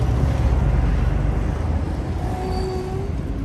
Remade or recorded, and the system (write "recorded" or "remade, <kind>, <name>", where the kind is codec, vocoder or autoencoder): recorded